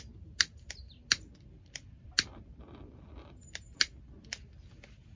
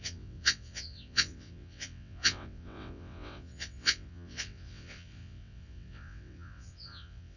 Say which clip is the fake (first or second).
second